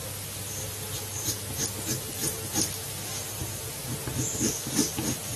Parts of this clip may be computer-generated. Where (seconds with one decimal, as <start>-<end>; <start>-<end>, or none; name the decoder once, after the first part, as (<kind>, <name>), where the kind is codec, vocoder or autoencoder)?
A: 2.2-2.7 (vocoder, BigVGAN v2)